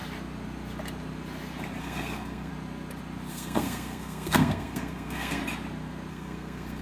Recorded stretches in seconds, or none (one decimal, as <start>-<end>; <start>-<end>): 0.0-1.8; 2.5-3.3; 5.4-6.1